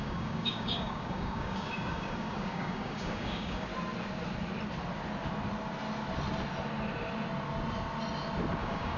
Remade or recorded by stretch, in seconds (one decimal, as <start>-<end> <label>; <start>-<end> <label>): 0.0-3.7 remade; 3.7-8.6 recorded; 8.6-9.0 remade